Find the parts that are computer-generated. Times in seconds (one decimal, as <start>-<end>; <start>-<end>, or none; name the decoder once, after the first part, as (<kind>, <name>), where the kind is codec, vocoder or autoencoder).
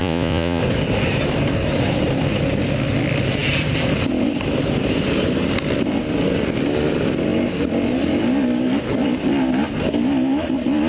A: 0.0-0.6 (vocoder, Vocos)